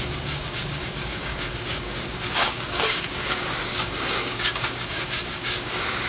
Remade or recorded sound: remade